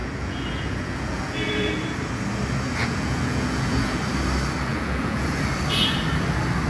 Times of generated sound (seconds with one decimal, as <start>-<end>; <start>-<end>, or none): 0.0-1.7; 2.8-4.0; 4.7-5.5